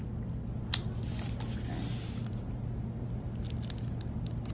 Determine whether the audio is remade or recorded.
recorded